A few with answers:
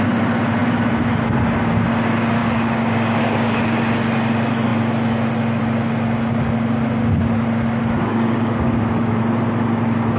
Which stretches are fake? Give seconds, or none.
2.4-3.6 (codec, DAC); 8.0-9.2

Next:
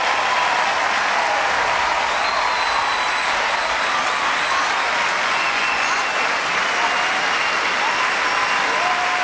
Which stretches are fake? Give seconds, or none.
5.2-6.0 (vocoder, Vocos)